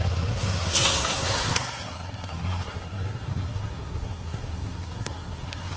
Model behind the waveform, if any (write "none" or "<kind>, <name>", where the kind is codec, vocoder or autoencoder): codec, SNAC